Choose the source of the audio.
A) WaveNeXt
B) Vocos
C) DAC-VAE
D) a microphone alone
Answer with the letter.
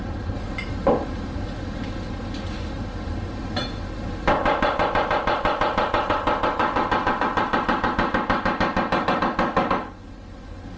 D